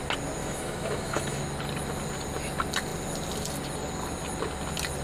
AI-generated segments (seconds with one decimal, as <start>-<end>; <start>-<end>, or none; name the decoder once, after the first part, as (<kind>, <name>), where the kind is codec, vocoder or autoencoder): 0.4-1.4 (autoencoder, DAC-VAE)